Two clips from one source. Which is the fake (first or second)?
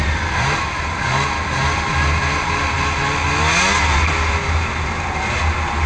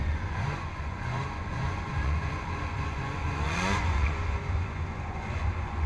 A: second